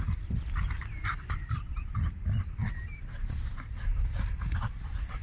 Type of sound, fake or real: real